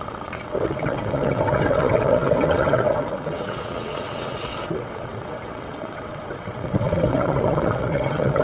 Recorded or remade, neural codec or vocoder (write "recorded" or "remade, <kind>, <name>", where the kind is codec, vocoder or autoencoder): remade, vocoder, WaveNeXt